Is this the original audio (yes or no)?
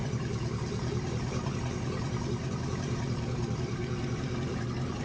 no